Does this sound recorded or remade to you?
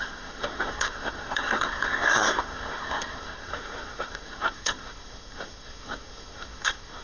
remade